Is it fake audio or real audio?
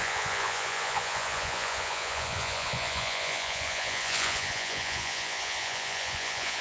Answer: fake